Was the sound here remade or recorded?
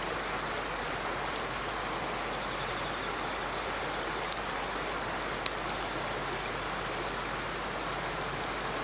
recorded